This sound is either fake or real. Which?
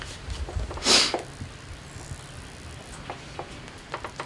real